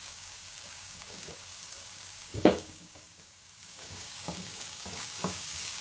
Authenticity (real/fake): fake